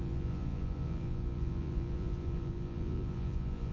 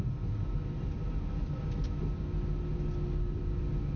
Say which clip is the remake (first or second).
first